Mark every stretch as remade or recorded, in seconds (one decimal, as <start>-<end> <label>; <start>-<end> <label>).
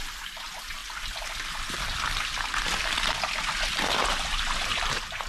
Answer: 0.0-0.8 remade; 0.8-4.0 recorded; 4.0-5.3 remade